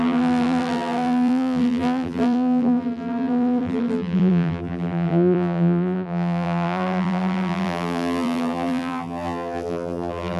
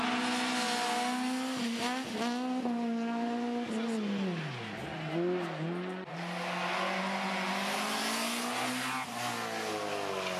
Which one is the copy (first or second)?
first